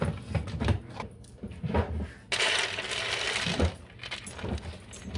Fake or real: real